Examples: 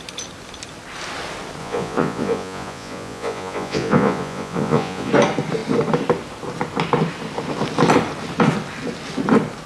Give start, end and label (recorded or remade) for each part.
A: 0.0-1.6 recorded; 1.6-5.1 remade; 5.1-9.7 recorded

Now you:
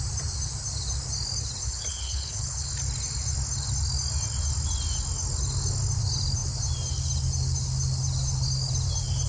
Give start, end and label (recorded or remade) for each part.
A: 0.0-1.6 recorded; 1.6-2.7 remade; 2.7-9.3 recorded